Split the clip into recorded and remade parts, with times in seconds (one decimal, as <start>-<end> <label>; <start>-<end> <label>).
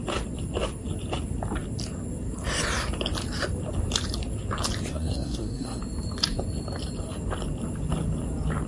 0.0-4.9 recorded; 4.9-5.8 remade; 5.8-8.7 recorded